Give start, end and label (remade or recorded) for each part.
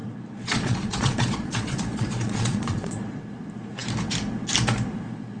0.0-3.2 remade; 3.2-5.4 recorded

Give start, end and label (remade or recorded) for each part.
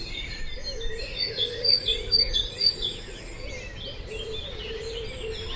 0.0-0.4 remade; 0.4-1.0 recorded; 1.0-3.3 remade; 3.3-5.6 recorded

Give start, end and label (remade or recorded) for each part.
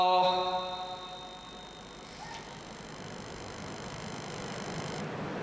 0.0-5.4 recorded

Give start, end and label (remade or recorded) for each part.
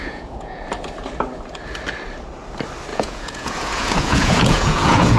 0.0-0.6 remade; 0.6-2.9 recorded; 2.9-5.2 remade